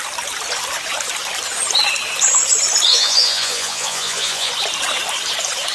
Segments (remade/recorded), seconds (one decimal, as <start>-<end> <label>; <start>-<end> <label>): 0.0-2.9 recorded; 2.9-4.5 remade; 4.5-5.7 recorded